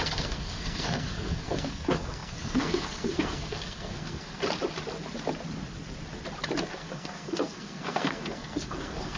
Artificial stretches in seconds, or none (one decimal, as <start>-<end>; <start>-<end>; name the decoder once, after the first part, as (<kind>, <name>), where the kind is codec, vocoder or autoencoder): 0.0-4.4 (codec, SNAC); 6.6-9.2